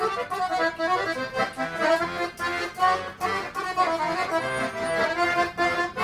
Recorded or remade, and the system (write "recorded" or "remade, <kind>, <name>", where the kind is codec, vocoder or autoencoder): recorded